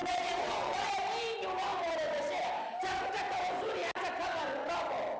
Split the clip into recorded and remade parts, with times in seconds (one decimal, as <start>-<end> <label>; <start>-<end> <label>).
0.0-0.9 remade; 0.9-5.2 recorded